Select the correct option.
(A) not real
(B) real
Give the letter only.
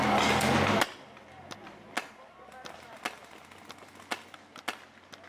B